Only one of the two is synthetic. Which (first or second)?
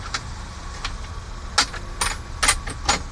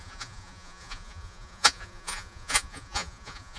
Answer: second